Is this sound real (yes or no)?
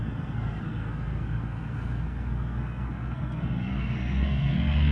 no